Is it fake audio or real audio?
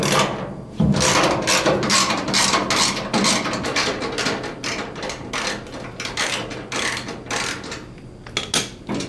real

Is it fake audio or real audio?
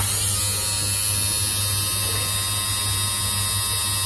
real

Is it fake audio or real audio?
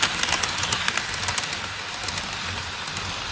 real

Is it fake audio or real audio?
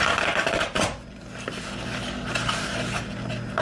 real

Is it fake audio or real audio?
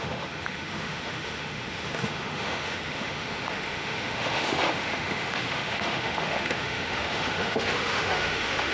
fake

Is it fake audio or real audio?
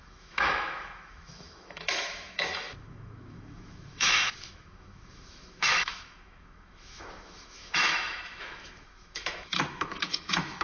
fake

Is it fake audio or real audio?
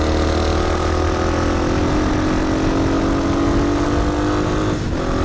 real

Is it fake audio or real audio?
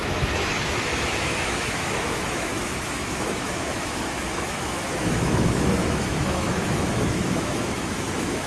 fake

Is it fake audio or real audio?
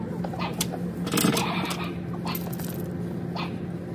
real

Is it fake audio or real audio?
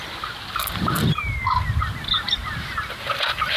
real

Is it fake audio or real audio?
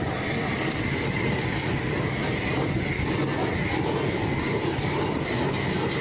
real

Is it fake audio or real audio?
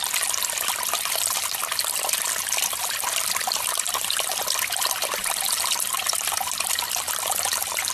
real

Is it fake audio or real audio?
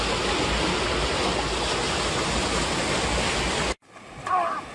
real